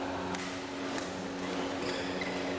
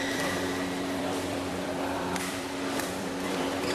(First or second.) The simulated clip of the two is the second